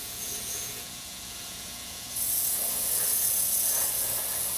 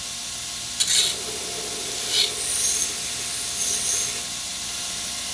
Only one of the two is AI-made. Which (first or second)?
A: first